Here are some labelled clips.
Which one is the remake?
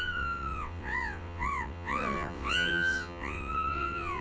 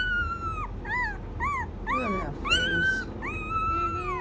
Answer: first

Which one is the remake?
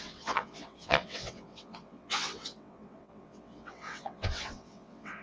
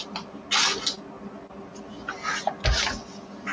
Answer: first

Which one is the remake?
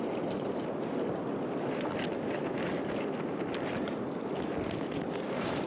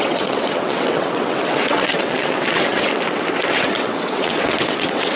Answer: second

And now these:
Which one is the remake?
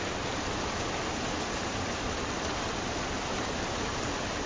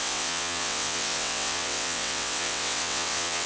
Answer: second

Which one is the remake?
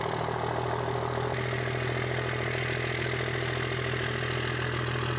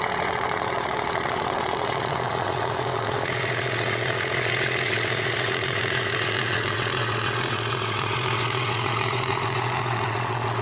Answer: second